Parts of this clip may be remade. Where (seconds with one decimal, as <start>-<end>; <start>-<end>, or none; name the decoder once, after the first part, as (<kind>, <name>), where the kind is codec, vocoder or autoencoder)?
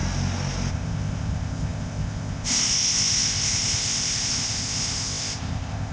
0.7-5.9 (codec, ZipCodec)